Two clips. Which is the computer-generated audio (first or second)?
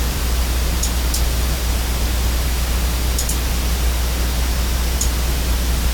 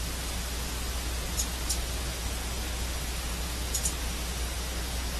first